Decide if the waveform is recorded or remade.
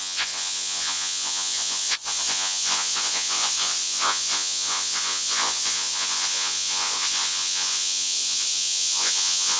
remade